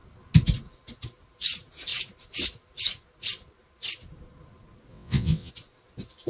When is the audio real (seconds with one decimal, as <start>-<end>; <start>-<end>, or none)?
0.0-4.9; 5.5-6.3